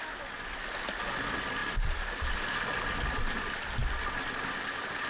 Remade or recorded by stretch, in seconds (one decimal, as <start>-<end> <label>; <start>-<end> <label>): 0.0-5.1 recorded